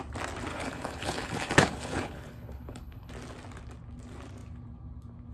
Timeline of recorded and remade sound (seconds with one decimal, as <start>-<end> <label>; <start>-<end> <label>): 0.0-0.5 recorded; 0.5-3.1 remade; 3.1-5.3 recorded